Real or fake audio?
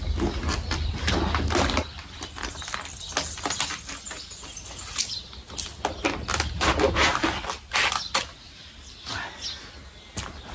real